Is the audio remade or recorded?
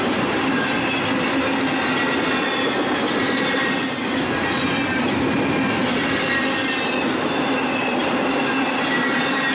recorded